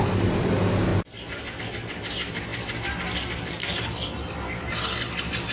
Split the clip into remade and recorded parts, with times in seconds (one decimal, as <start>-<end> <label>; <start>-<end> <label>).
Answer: 0.0-5.5 recorded